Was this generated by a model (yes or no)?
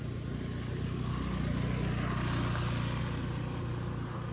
no